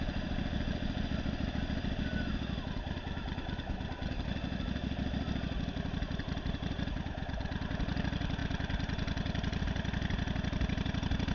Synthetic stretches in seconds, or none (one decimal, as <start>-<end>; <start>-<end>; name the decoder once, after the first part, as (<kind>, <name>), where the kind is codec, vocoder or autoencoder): none